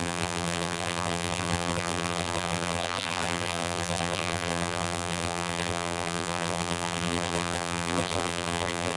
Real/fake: fake